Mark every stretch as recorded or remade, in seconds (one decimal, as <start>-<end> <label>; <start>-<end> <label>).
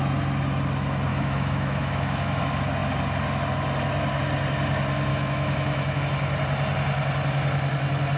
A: 0.0-1.1 recorded; 1.1-2.4 remade; 2.4-5.1 recorded; 5.1-6.0 remade; 6.0-8.2 recorded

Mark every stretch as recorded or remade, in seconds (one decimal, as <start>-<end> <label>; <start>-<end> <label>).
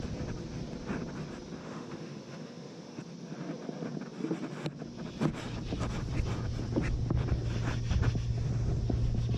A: 0.0-1.6 recorded; 1.6-3.0 remade; 3.0-9.4 recorded